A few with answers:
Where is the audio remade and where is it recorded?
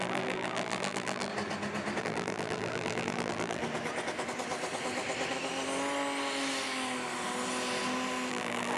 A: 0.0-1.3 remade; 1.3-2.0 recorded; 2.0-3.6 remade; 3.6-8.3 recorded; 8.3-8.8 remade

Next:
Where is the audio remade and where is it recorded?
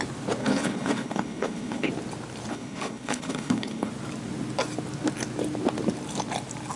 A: 0.0-0.4 recorded; 0.4-1.9 remade; 1.9-2.5 recorded; 2.5-3.9 remade; 3.9-6.8 recorded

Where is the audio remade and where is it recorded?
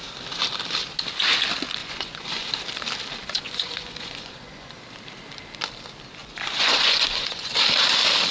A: 0.0-1.8 recorded; 1.8-2.5 remade; 2.5-3.2 recorded; 3.2-4.7 remade; 4.7-6.2 recorded; 6.2-7.5 remade; 7.5-8.3 recorded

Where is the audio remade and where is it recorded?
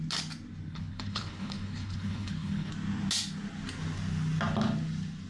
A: 0.0-0.7 recorded; 0.7-2.7 remade; 2.7-5.3 recorded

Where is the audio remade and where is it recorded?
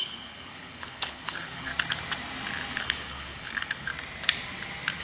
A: 0.0-1.7 remade; 1.7-2.8 recorded; 2.8-3.9 remade; 3.9-5.0 recorded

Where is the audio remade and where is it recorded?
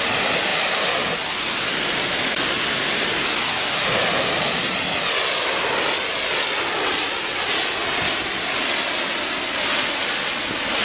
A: 0.0-10.8 recorded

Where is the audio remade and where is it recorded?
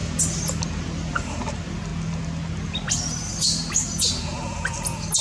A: 0.0-0.8 recorded; 0.8-1.9 remade; 1.9-5.2 recorded